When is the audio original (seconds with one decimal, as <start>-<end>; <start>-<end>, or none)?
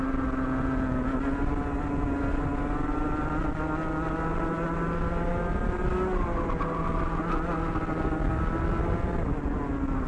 0.0-10.1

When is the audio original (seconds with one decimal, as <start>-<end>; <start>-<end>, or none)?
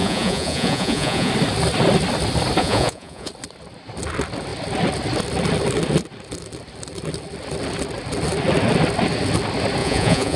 1.3-2.6; 3.3-9.8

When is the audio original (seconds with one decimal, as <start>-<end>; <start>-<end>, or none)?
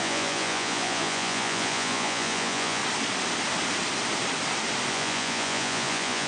2.8-4.9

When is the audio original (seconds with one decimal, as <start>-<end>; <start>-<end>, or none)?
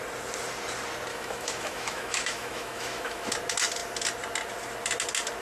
0.0-1.1; 3.3-5.4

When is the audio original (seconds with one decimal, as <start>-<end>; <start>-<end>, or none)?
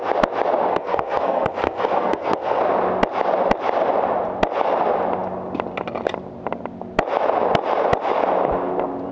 0.0-0.7; 2.6-9.1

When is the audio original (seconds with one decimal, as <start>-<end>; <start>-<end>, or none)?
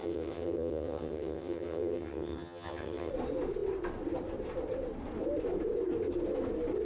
3.1-6.8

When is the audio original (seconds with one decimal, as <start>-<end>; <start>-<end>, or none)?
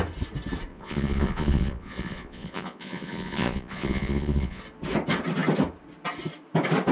0.0-0.7; 4.6-6.9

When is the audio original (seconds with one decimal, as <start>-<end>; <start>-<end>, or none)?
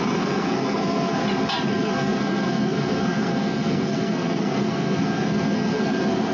1.2-1.7